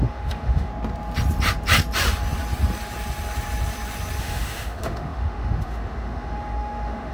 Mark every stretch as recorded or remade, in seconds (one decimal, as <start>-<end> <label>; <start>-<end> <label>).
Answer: 0.0-0.7 remade; 0.7-4.2 recorded; 4.2-7.1 remade